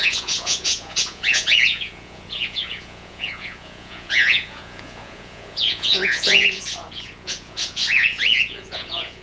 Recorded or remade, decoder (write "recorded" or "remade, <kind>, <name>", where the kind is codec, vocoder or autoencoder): remade, vocoder, Vocos